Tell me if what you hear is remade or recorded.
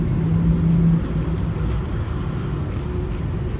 recorded